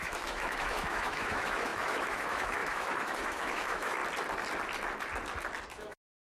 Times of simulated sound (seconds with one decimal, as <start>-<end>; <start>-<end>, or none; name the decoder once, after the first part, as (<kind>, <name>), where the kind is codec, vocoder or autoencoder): 0.0-4.0 (autoencoder, DAC-VAE); 5.7-6.3